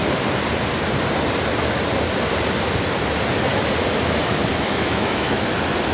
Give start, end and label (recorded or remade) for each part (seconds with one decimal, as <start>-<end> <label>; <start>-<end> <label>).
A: 0.0-4.5 recorded; 4.5-5.4 remade; 5.4-5.9 recorded